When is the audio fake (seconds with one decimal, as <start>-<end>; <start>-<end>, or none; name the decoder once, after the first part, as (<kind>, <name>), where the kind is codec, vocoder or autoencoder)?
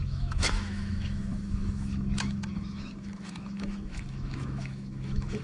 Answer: 0.0-5.4 (autoencoder, DAC-VAE)